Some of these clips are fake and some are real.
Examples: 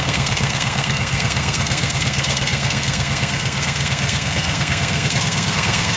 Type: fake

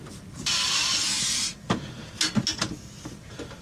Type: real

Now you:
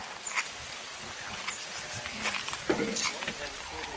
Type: real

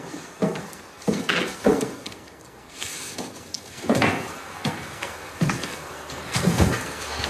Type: fake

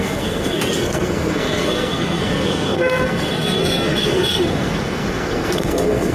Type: fake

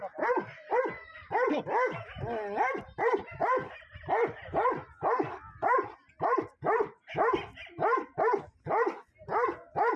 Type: real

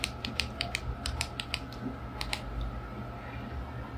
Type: real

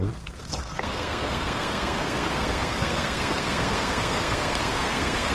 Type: fake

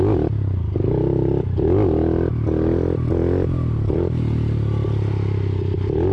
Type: real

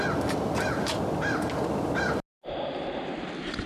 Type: real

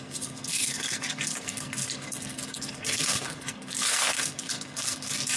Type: fake